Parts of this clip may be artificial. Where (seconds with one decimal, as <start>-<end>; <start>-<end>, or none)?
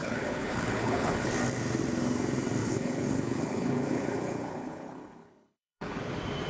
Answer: 0.0-1.3; 2.6-6.1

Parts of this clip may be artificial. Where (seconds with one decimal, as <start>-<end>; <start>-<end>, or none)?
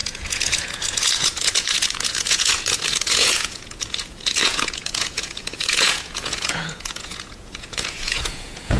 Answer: 0.0-8.8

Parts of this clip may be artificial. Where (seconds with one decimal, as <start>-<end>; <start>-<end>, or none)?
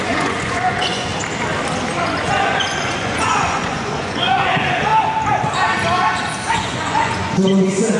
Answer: 0.0-1.1; 2.0-4.9; 6.5-8.0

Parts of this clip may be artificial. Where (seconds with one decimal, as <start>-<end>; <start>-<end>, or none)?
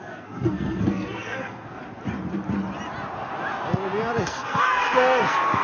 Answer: 0.0-1.8; 4.2-5.6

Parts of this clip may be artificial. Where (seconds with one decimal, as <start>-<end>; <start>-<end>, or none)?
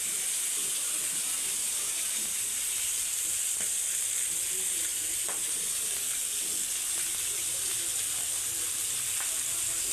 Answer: 0.6-3.7; 4.9-6.0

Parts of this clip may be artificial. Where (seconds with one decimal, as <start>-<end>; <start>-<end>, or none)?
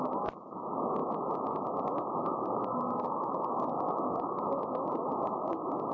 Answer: 2.4-4.4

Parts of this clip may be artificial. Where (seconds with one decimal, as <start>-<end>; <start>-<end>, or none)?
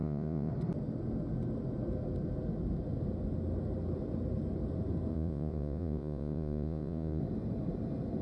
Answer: 0.0-0.5; 5.1-7.2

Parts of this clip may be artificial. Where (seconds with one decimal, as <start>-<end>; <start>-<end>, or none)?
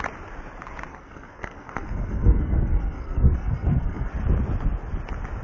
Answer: 0.9-4.1